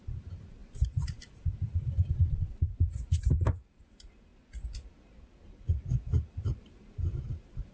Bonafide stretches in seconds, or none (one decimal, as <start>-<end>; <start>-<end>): 4.3-6.0